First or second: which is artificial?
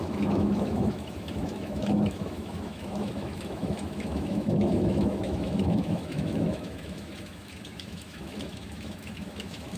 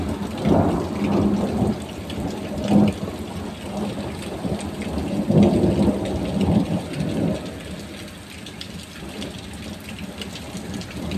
first